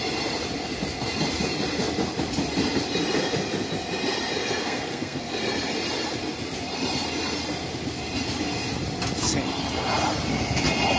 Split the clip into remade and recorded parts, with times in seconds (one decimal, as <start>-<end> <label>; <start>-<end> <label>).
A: 0.0-4.6 recorded; 4.6-5.4 remade; 5.4-11.0 recorded

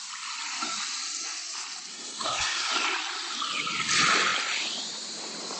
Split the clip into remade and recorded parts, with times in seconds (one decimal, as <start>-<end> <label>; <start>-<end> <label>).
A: 0.0-1.9 recorded; 1.9-2.7 remade; 2.7-5.6 recorded

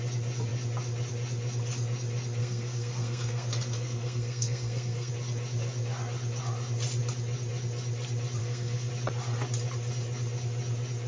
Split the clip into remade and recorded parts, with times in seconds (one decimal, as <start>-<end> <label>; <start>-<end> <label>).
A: 0.0-2.4 recorded; 2.4-5.1 remade; 5.1-8.4 recorded; 8.4-8.9 remade; 8.9-11.1 recorded

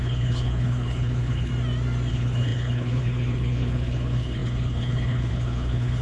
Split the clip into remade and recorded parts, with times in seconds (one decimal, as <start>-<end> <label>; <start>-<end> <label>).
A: 0.0-1.5 remade; 1.5-2.1 recorded; 2.1-6.0 remade

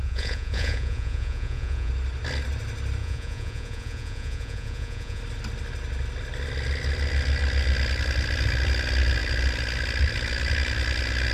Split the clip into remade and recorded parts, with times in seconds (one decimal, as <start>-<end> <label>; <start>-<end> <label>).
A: 0.0-1.9 remade; 1.9-3.0 recorded; 3.0-5.2 remade; 5.2-11.3 recorded

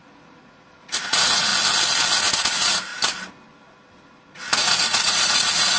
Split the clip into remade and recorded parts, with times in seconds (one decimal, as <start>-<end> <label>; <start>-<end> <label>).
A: 0.0-1.5 remade; 1.5-2.2 recorded; 2.2-2.9 remade; 2.9-4.2 recorded; 4.2-5.8 remade